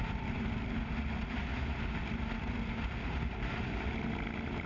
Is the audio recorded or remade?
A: recorded